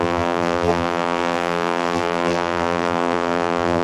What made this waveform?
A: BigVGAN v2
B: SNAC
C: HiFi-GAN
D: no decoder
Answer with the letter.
A